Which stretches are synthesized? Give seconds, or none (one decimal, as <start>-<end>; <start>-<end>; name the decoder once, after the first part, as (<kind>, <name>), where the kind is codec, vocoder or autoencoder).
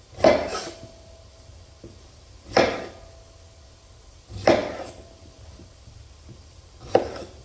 1.3-2.8 (vocoder, BigVGAN v2); 4.6-7.4